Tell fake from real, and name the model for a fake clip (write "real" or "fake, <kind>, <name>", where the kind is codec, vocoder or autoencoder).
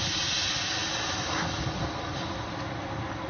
real